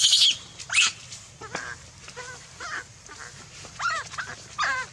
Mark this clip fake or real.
real